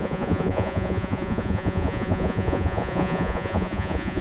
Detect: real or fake fake